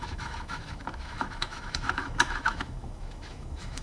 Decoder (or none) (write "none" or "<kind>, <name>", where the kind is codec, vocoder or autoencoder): autoencoder, DAC-VAE